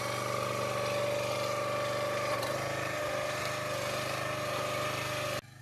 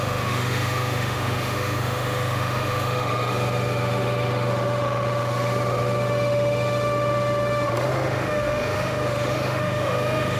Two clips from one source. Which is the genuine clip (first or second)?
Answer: first